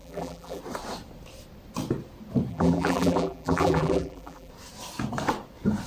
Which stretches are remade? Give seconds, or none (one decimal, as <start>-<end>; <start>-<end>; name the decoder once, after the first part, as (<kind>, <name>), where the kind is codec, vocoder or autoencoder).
0.0-0.6 (vocoder, BigVGAN v2); 2.5-4.5